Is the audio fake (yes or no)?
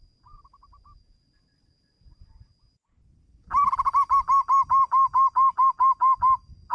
no